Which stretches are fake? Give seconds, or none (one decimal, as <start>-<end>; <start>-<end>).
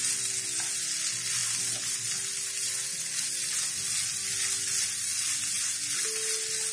none